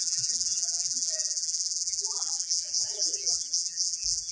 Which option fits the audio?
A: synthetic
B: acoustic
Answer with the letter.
A